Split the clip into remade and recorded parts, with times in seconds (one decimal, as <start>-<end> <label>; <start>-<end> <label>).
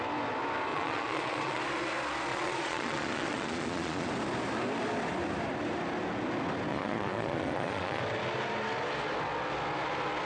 0.0-0.7 recorded; 0.7-1.6 remade; 1.6-2.3 recorded; 2.3-4.1 remade; 4.1-6.7 recorded; 6.7-8.0 remade; 8.0-10.3 recorded